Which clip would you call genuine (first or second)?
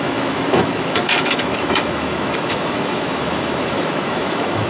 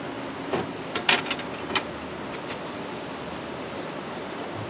second